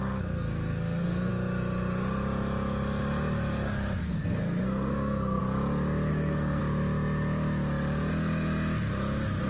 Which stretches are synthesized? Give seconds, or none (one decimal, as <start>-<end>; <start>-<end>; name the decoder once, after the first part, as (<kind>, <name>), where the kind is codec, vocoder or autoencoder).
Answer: 0.0-1.3 (codec, SNAC); 4.0-5.4; 6.1-6.6